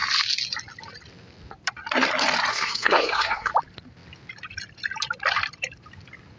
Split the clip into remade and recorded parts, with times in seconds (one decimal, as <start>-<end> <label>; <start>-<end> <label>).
0.0-2.5 recorded; 2.5-3.5 remade; 3.5-6.4 recorded